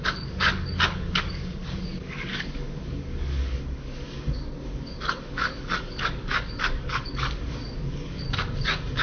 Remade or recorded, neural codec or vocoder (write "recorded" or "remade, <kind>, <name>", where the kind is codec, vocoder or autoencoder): remade, codec, DAC